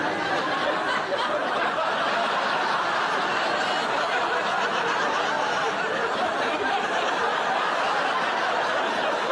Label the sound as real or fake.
real